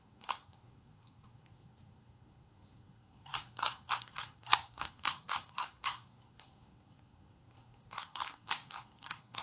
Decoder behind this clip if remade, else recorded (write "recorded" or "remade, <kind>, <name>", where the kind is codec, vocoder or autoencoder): remade, codec, SNAC